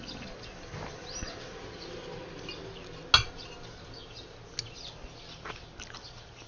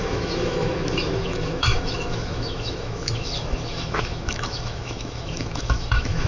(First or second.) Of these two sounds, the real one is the first